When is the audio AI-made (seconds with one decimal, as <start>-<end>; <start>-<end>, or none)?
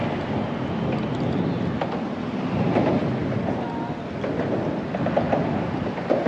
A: none